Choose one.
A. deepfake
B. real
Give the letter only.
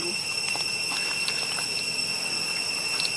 B